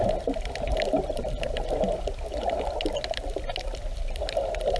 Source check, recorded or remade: recorded